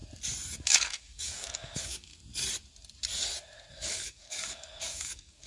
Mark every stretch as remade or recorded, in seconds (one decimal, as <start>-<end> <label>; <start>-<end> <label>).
0.0-0.6 recorded; 0.6-2.1 remade; 2.1-3.7 recorded; 3.7-5.5 remade